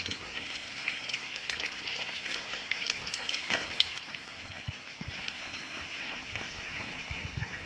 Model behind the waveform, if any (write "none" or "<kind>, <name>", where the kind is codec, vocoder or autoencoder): codec, SNAC